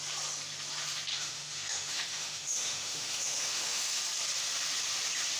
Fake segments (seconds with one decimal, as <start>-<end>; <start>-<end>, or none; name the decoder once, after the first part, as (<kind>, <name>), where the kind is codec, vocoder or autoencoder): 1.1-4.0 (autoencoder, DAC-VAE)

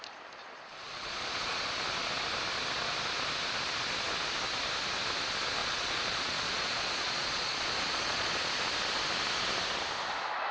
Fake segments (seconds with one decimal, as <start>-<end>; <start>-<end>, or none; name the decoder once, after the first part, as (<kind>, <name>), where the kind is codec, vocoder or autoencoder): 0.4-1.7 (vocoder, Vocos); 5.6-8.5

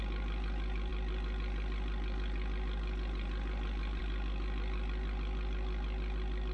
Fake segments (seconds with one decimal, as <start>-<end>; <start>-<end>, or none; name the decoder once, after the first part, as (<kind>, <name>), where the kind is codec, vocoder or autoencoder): none